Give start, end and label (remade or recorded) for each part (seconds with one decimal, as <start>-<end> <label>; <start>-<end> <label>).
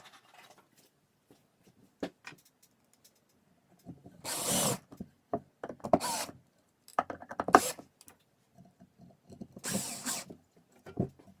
0.0-11.4 recorded